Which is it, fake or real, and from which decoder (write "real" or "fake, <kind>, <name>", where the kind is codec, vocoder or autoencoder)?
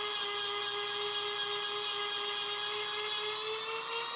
real